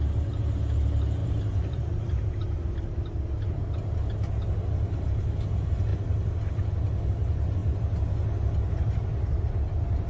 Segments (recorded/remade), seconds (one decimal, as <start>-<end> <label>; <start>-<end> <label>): 0.0-1.2 recorded; 1.2-3.0 remade; 3.0-5.9 recorded; 5.9-6.5 remade; 6.5-10.1 recorded